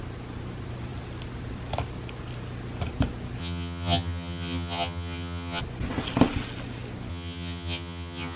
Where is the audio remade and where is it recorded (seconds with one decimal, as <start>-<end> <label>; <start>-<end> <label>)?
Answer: 0.0-3.4 recorded; 3.4-5.6 remade; 5.6-7.1 recorded; 7.1-8.4 remade